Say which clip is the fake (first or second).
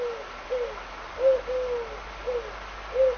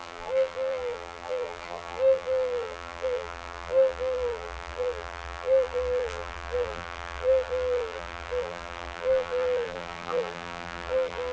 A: second